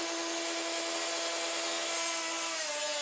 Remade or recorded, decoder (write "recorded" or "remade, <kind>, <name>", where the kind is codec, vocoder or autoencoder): recorded